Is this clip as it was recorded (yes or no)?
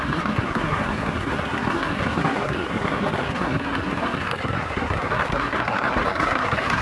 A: no